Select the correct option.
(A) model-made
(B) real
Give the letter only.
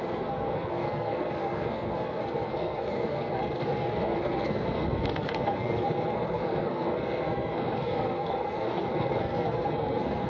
A